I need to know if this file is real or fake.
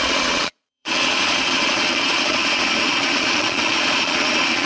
fake